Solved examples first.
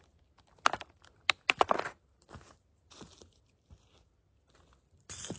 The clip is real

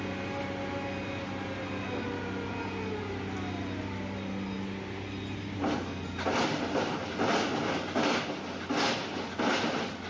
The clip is real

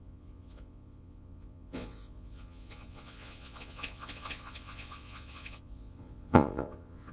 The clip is fake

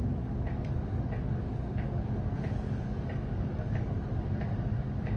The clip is fake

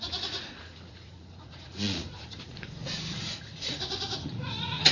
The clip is fake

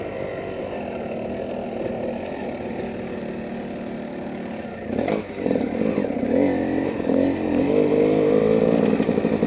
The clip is real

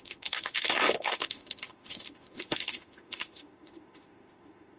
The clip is fake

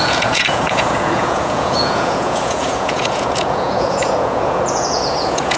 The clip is fake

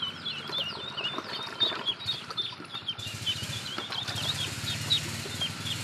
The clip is real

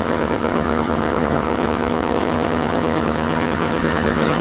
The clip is fake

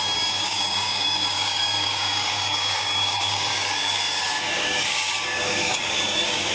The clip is fake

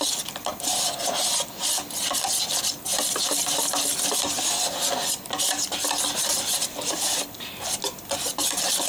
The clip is real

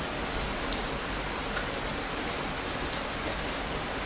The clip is real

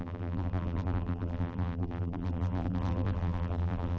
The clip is fake